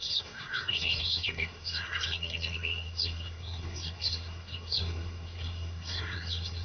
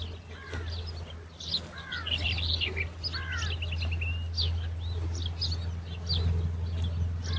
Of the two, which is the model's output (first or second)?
first